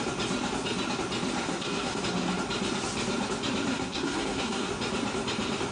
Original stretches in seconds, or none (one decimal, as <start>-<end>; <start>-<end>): 0.0-1.4; 2.0-3.7; 4.7-5.7